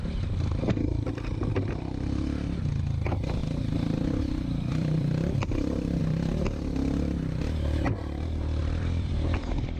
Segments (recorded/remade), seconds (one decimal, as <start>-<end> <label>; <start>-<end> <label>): 0.0-3.4 recorded; 3.4-6.0 remade; 6.0-8.6 recorded; 8.6-9.1 remade; 9.1-9.8 recorded